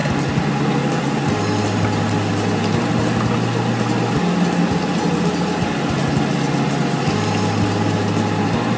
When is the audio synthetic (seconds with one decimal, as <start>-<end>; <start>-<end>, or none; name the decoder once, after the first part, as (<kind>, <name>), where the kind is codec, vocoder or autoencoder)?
none